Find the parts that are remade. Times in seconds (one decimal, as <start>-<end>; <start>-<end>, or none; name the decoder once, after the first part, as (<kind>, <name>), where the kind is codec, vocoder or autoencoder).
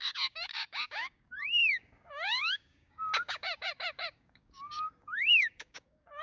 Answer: 0.0-6.2 (codec, DAC)